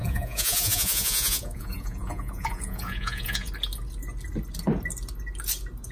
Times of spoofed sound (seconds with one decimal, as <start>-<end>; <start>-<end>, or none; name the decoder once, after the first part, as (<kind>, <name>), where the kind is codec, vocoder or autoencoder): 0.0-3.5 (vocoder, Vocos)